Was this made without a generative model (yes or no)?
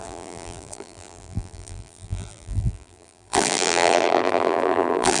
no